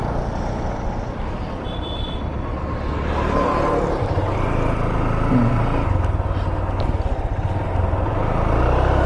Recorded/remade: recorded